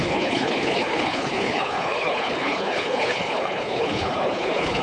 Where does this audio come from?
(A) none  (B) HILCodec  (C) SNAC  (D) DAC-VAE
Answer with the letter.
B